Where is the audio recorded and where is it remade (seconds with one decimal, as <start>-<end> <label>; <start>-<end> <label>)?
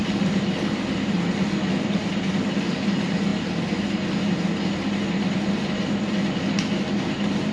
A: 0.0-2.4 remade; 2.4-7.5 recorded